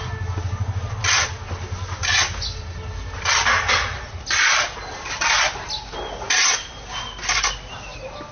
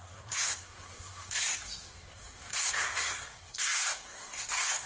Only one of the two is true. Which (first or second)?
first